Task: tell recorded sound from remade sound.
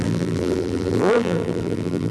remade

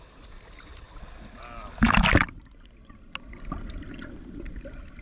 recorded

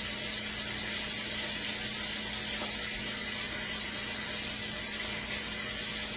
recorded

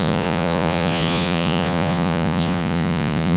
remade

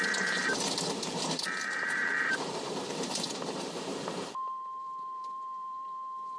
remade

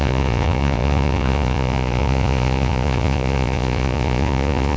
remade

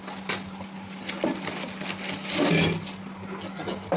recorded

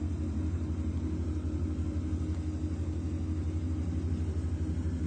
recorded